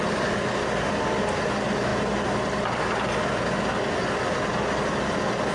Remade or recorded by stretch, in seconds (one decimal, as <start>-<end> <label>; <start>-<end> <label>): 0.0-5.5 recorded